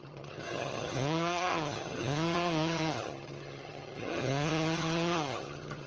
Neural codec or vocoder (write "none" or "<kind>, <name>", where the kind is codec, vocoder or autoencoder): vocoder, HiFi-GAN